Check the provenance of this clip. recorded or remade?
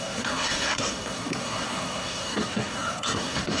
remade